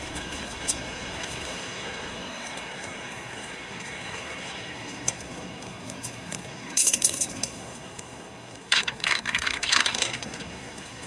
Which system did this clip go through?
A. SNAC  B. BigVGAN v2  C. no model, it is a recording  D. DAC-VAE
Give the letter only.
A